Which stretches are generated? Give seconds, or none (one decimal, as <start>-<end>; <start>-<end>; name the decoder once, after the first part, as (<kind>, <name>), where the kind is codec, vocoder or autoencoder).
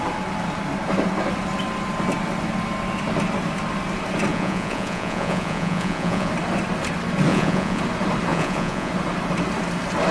4.3-6.3 (vocoder, Vocos); 7.3-7.8; 8.3-8.9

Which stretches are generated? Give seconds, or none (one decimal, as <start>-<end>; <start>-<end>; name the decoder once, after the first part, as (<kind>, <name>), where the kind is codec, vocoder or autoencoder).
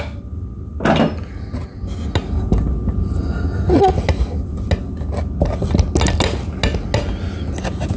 none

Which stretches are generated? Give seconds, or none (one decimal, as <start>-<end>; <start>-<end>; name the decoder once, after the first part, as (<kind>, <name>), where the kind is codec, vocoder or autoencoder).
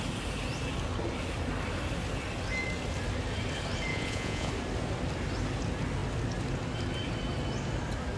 3.9-4.5 (vocoder, Vocos)